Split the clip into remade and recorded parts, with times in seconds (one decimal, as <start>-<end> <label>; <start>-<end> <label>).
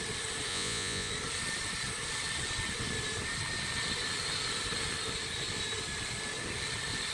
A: 0.0-0.5 recorded; 0.5-1.1 remade; 1.1-7.1 recorded